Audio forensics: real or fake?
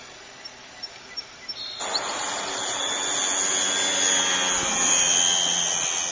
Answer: real